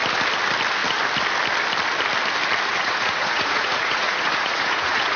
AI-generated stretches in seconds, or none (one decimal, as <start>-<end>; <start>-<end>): 2.7-5.2